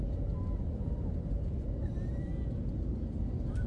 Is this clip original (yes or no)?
no